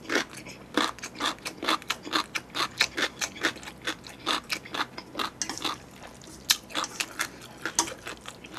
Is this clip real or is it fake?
real